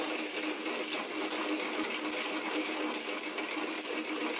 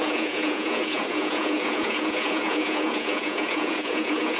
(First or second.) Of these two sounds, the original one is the first